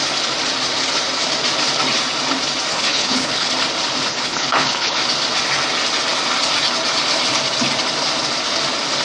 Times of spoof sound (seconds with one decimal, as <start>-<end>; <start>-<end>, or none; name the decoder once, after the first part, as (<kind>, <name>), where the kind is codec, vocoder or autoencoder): 2.7-3.5 (codec, HILCodec); 4.1-5.0